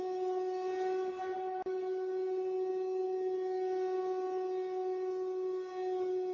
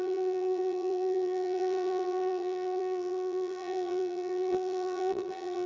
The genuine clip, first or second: first